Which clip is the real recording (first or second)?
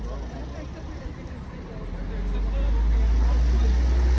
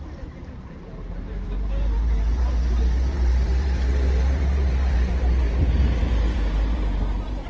first